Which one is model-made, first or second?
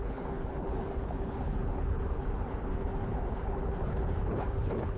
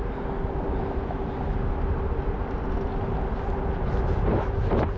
first